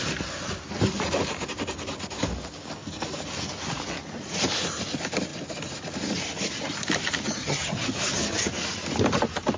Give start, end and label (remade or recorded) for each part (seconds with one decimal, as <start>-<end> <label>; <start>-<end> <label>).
0.0-7.4 recorded; 7.4-8.5 remade; 8.5-9.6 recorded